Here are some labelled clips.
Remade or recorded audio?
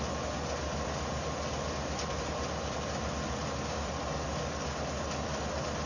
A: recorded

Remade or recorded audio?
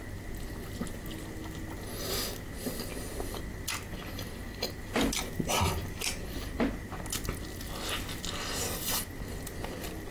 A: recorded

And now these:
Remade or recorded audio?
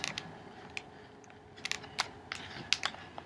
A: recorded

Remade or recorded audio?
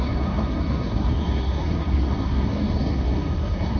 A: remade